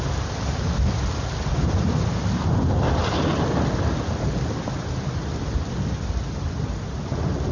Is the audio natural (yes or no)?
yes